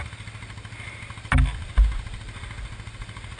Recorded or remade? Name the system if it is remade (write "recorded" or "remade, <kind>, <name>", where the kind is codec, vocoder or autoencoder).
recorded